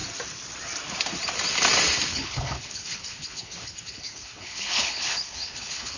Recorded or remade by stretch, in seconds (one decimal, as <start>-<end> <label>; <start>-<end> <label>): 0.0-2.1 recorded; 2.1-6.0 remade